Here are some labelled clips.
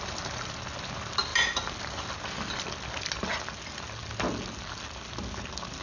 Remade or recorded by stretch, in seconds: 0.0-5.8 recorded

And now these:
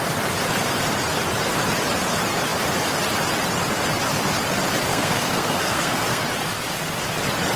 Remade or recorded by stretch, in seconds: 0.0-4.9 recorded; 4.9-6.2 remade; 6.2-7.6 recorded